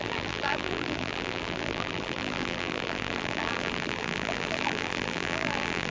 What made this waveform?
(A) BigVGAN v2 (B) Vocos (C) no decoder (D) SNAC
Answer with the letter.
A